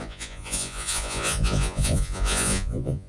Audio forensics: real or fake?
fake